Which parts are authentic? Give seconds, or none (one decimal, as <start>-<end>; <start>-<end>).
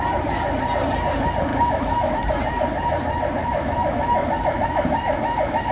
0.0-1.5; 2.1-3.4